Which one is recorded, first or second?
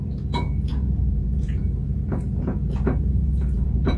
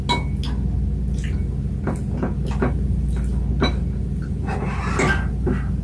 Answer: second